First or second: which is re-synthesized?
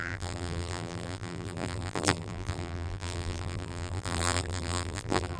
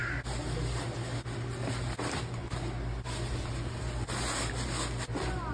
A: first